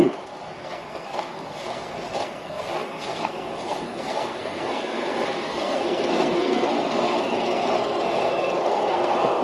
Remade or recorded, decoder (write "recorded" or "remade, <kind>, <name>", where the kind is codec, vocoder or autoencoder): remade, codec, SNAC